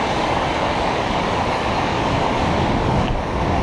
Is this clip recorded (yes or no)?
no